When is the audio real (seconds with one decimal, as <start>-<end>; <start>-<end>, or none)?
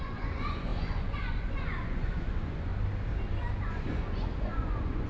2.7-3.6